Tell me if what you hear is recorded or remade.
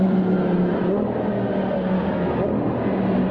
recorded